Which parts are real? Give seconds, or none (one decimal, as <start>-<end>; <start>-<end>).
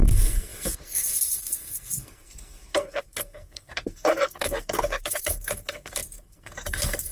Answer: none